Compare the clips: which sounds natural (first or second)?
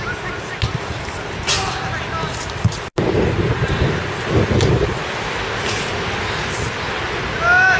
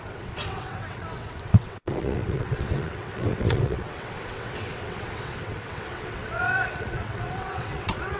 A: first